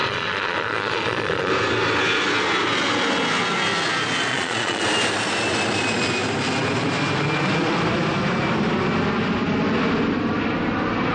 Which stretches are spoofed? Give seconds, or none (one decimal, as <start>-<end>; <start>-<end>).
0.0-1.5; 4.3-4.8